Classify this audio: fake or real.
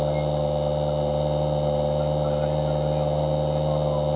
real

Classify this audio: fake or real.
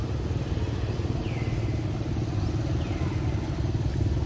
real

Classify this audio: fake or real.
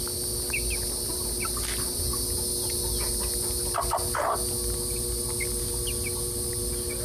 real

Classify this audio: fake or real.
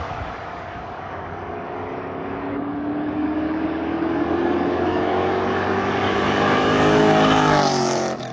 fake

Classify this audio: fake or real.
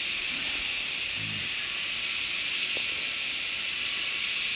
real